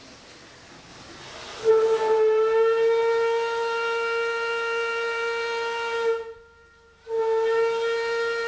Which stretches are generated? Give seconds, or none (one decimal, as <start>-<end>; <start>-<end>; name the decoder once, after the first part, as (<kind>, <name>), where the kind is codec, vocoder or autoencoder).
none